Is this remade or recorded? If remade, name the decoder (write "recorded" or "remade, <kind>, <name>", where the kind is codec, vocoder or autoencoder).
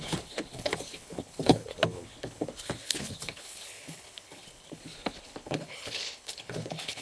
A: remade, codec, HILCodec